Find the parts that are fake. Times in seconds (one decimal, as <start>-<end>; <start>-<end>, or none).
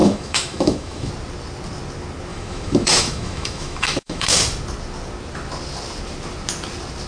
0.0-1.1; 2.3-4.3